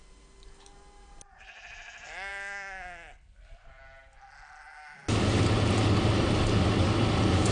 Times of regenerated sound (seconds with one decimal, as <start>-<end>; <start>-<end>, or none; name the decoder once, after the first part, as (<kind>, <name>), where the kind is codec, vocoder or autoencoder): none